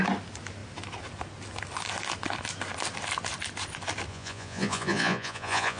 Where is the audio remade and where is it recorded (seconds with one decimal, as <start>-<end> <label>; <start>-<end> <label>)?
0.0-4.1 recorded; 4.1-5.8 remade